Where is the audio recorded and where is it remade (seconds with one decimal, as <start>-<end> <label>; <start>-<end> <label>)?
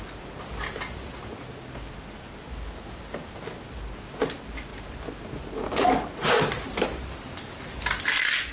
0.0-8.5 recorded